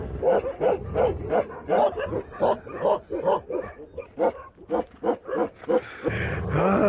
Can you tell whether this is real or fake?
real